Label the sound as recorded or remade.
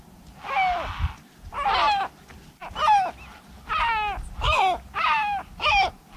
recorded